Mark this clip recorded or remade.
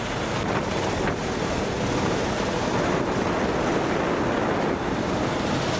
recorded